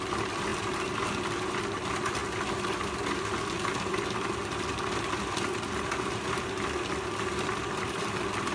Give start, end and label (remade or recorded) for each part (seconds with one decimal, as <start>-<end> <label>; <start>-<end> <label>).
0.0-2.2 remade; 2.2-7.2 recorded; 7.2-8.5 remade